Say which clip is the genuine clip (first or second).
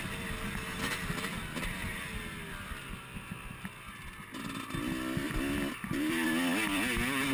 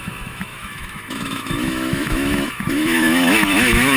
first